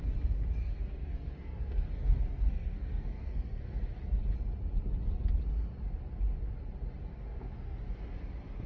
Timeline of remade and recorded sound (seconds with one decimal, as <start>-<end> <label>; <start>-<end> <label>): 0.0-0.6 recorded; 0.6-3.7 remade; 3.7-7.1 recorded; 7.1-7.8 remade; 7.8-8.7 recorded